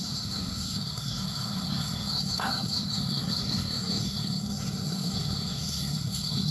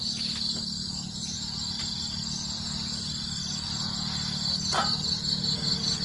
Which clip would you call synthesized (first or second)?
first